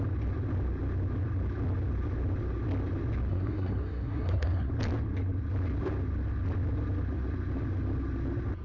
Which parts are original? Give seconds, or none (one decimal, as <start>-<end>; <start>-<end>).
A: 0.0-3.3; 4.7-8.6